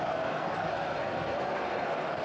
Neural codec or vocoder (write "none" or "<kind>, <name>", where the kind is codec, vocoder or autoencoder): codec, SNAC